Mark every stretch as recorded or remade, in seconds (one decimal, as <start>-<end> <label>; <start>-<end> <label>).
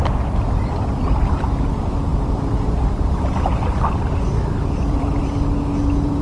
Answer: 0.0-4.8 recorded; 4.8-5.3 remade; 5.3-6.2 recorded